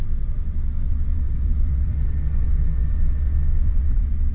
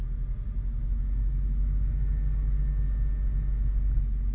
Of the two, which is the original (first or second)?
second